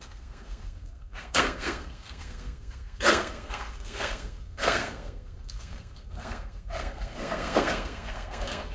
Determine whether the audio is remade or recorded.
remade